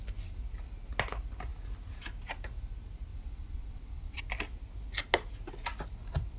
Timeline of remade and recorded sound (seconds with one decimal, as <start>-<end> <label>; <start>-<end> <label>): 0.0-3.1 recorded; 3.1-4.2 remade; 4.2-6.4 recorded